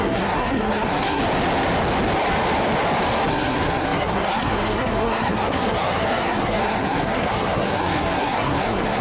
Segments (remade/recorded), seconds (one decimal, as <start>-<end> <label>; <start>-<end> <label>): 0.0-1.2 remade; 1.2-3.3 recorded; 3.3-9.0 remade